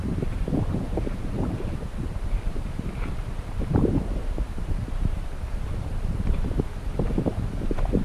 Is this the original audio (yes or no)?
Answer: no